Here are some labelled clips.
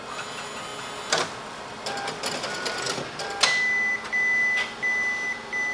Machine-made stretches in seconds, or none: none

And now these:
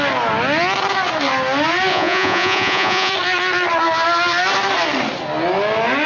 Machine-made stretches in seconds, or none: 1.9-3.1 (vocoder, Vocos)

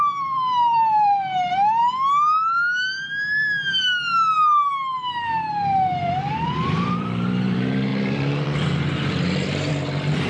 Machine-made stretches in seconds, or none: 0.0-1.8 (vocoder, BigVGAN v2); 6.3-10.3

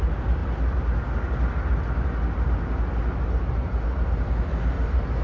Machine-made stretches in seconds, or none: none

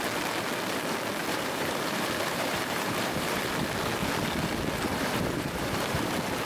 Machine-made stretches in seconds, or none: 1.2-3.4 (vocoder, BigVGAN v2); 4.9-6.1

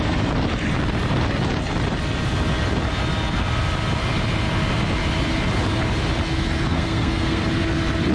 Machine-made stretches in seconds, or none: 6.7-7.4 (codec, SNAC)